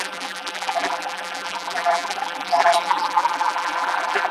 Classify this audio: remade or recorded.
remade